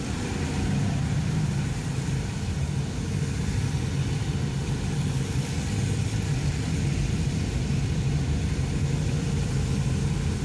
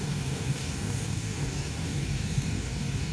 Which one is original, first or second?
first